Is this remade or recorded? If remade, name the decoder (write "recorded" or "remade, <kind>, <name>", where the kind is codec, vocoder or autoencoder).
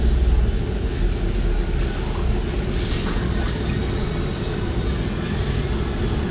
recorded